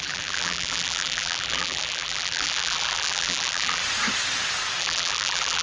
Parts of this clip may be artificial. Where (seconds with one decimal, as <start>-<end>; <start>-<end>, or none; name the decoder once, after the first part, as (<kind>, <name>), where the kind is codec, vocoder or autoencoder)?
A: 0.0-3.8 (vocoder, BigVGAN v2); 4.8-5.6